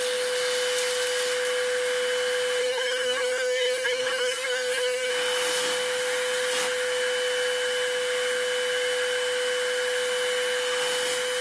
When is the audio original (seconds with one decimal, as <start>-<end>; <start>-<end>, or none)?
0.0-2.6; 5.1-11.4